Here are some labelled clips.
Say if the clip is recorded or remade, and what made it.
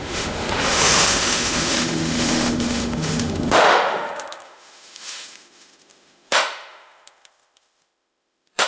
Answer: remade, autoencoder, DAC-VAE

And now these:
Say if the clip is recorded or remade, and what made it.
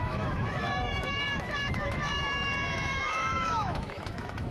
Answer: remade, autoencoder, DAC-VAE